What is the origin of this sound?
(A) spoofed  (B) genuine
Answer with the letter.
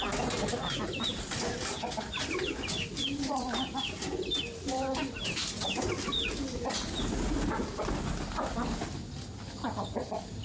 B